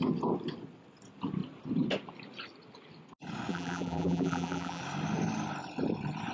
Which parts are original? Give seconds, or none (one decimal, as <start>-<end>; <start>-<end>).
0.0-3.5; 4.8-6.3